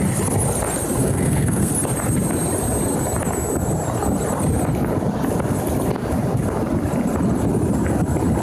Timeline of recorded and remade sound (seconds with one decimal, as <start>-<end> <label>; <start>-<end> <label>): 0.0-1.0 recorded; 1.0-1.7 remade; 1.7-8.4 recorded